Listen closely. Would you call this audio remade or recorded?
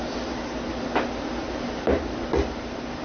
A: recorded